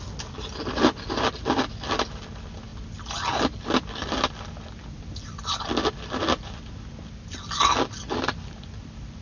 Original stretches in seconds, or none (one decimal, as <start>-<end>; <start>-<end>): 0.0-9.2